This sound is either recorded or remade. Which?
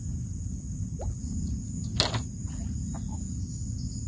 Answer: recorded